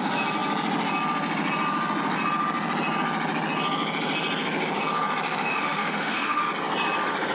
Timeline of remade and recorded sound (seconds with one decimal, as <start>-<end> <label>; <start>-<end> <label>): 0.0-5.5 recorded; 5.5-6.4 remade; 6.4-7.3 recorded